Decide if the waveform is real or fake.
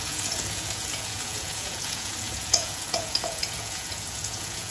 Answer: fake